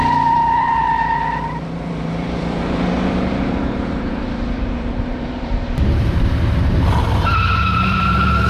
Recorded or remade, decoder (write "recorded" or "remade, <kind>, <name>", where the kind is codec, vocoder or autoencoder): remade, vocoder, BigVGAN v2